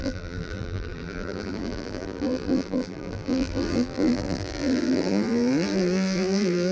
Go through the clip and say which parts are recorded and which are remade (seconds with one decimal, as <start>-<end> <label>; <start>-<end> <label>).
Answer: 0.0-6.7 remade